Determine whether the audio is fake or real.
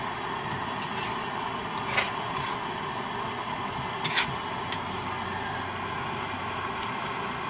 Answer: real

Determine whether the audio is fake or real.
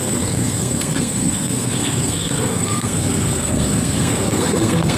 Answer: fake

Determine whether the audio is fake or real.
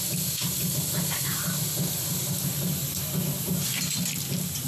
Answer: real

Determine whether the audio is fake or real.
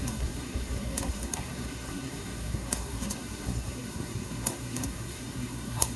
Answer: fake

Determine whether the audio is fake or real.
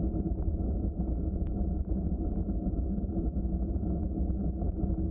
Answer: real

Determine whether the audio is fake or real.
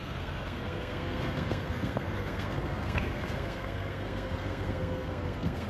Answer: fake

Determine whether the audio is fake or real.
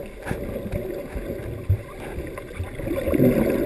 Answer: real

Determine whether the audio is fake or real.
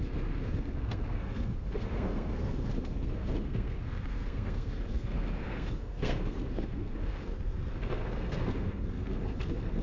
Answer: fake